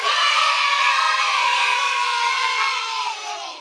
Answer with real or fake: fake